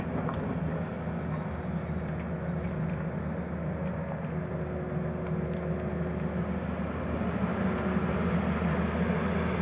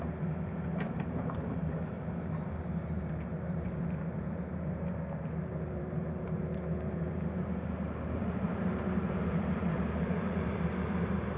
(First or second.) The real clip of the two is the first